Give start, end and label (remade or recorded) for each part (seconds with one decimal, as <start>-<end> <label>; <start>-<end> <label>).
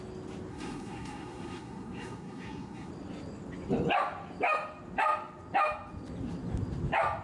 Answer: 0.0-0.5 recorded; 0.5-2.9 remade; 2.9-7.2 recorded